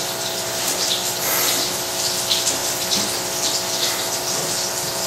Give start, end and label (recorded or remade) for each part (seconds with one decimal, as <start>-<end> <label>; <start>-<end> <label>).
0.0-5.1 recorded

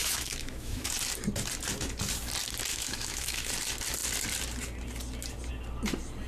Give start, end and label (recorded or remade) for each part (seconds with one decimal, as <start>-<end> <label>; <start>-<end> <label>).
0.0-0.9 remade; 0.9-2.7 recorded; 2.7-3.5 remade; 3.5-6.3 recorded